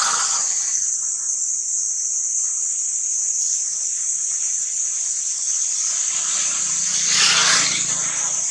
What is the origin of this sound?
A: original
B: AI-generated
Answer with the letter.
A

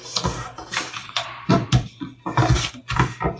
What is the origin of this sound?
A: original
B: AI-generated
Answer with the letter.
B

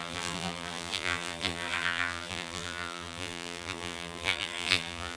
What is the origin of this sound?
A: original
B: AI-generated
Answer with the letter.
B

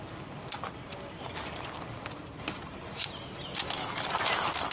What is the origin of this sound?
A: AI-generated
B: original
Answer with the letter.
B